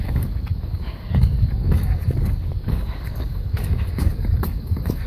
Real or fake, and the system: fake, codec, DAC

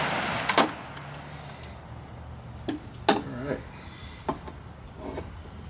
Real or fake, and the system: real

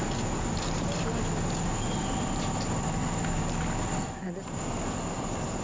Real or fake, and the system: real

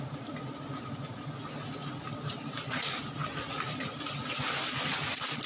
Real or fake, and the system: real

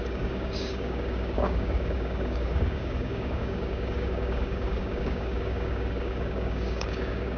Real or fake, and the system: fake, codec, DAC